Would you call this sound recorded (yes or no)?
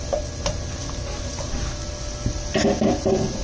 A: yes